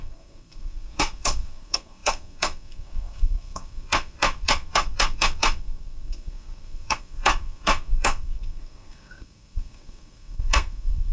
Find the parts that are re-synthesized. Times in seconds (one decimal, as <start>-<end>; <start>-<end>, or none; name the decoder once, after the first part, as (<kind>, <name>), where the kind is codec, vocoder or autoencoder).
0.0-11.1 (codec, SNAC)